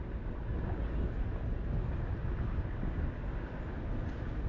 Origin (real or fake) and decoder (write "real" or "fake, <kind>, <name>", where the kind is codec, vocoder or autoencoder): real